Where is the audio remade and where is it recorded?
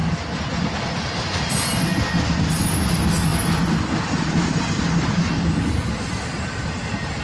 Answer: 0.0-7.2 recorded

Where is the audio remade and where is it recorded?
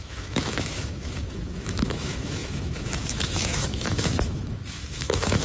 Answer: 0.0-5.4 remade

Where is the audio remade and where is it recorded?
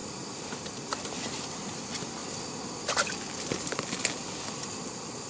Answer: 0.0-1.6 remade; 1.6-5.3 recorded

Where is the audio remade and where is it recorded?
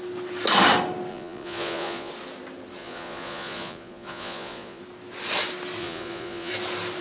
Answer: 0.0-1.1 recorded; 1.1-2.1 remade; 2.1-2.8 recorded; 2.8-4.8 remade; 4.8-5.8 recorded; 5.8-6.5 remade; 6.5-7.0 recorded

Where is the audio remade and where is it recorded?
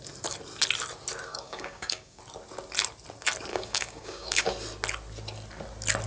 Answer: 0.0-1.3 recorded; 1.3-2.2 remade; 2.2-3.5 recorded; 3.5-4.5 remade; 4.5-6.1 recorded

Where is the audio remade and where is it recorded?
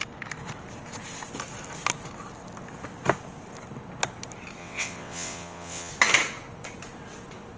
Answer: 0.0-4.6 recorded; 4.6-5.9 remade; 5.9-7.6 recorded